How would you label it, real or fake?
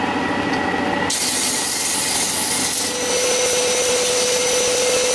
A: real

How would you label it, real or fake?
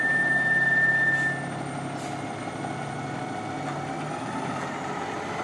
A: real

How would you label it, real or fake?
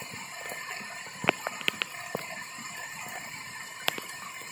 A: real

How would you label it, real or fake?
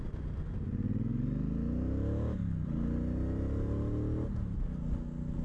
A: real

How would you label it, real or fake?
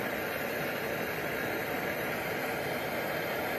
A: real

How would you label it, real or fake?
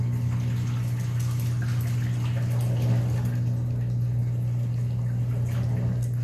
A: real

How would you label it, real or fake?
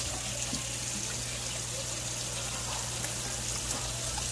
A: real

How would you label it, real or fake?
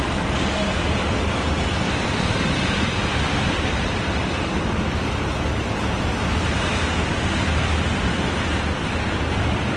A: fake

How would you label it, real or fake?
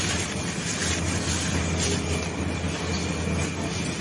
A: real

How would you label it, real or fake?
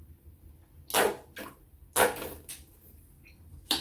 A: real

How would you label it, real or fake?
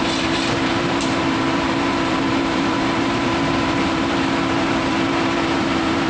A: fake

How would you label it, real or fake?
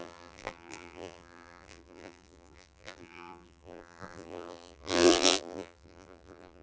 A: fake